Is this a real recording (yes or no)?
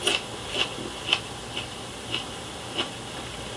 yes